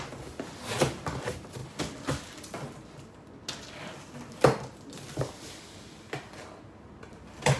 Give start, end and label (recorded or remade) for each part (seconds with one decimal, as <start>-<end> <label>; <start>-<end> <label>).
0.0-7.6 recorded